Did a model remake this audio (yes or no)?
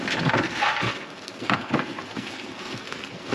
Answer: yes